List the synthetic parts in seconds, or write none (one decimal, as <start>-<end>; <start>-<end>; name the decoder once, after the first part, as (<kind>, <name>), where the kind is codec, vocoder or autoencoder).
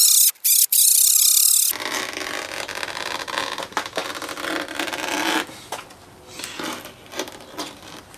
none